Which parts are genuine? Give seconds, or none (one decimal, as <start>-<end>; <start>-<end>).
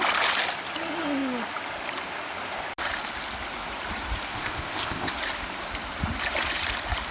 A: 0.0-4.3; 5.1-7.1